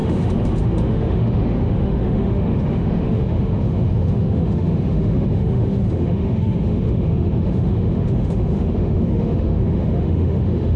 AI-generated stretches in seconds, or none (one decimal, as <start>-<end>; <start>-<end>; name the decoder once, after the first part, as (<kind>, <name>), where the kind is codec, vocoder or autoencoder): 0.0-10.8 (autoencoder, DAC-VAE)